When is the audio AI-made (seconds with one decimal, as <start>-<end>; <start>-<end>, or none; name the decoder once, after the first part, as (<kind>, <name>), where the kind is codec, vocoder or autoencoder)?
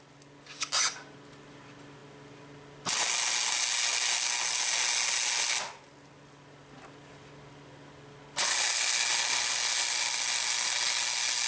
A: none